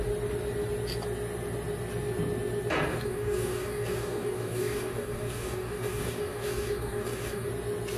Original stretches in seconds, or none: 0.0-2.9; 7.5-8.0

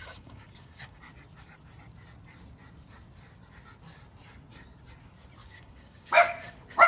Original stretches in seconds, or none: 1.0-5.4; 6.5-6.9